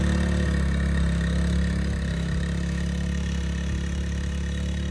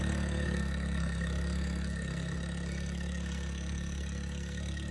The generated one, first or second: second